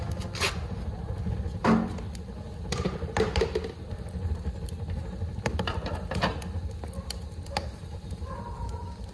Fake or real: real